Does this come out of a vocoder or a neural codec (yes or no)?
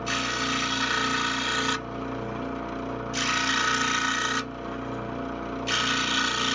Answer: no